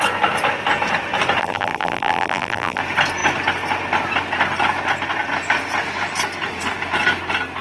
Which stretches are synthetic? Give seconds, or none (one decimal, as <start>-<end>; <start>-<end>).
1.4-2.8